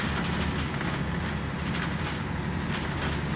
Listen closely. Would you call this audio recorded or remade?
recorded